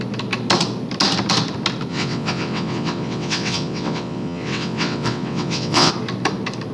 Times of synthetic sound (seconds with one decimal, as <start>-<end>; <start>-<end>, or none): 1.9-5.9